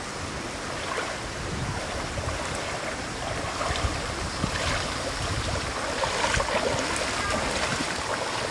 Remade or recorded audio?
recorded